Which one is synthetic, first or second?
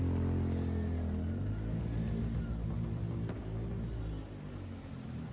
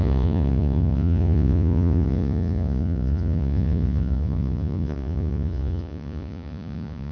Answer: second